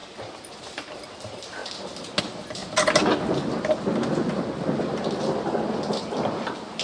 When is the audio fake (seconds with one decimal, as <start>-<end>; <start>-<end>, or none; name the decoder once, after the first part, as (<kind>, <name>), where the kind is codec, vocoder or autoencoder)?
0.0-1.6 (vocoder, BigVGAN v2); 2.2-2.6